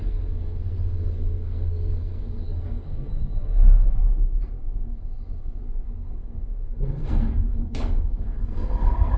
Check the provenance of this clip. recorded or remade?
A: remade